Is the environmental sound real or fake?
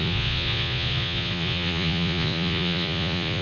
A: fake